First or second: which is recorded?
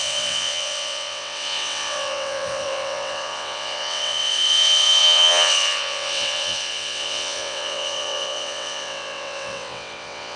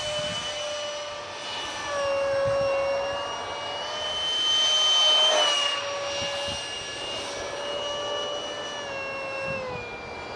second